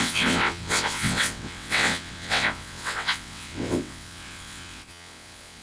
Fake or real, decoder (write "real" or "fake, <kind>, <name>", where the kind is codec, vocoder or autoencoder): fake, vocoder, WaveNeXt